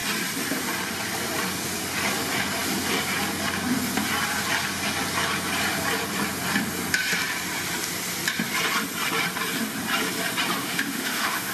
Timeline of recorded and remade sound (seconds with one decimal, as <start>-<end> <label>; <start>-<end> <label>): 0.0-10.6 recorded; 10.6-11.5 remade